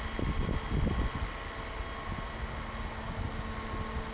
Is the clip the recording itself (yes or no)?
yes